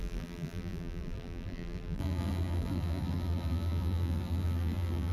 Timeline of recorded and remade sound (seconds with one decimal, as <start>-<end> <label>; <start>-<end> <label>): 0.0-5.1 remade

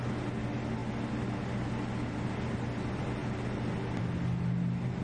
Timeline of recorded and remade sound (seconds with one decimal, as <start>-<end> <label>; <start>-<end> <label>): 0.0-5.0 recorded

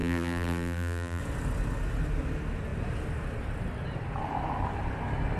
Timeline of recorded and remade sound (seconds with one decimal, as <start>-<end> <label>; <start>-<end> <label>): 0.0-1.2 remade; 1.2-5.4 recorded

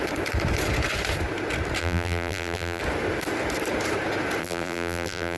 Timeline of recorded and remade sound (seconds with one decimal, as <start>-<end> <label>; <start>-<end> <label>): 0.0-1.8 recorded; 1.8-2.8 remade; 2.8-4.4 recorded; 4.4-5.4 remade

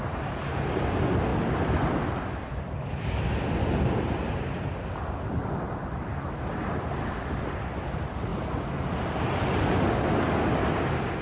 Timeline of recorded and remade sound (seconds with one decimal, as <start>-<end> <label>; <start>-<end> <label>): 0.0-1.3 recorded; 1.3-3.0 remade; 3.0-11.2 recorded

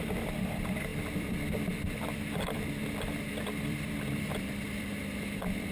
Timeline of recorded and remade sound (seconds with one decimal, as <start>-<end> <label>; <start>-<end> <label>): 0.0-5.7 remade

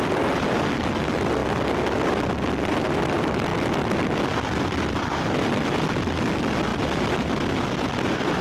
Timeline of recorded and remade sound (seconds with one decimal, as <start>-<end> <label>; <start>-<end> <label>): 0.0-1.4 remade; 1.4-2.7 recorded; 2.7-3.5 remade; 3.5-4.3 recorded; 4.3-8.4 remade